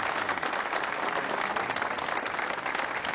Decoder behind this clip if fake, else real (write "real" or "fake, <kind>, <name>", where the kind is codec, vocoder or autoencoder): real